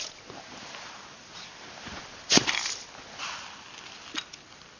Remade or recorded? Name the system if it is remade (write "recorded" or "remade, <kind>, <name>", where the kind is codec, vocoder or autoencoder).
recorded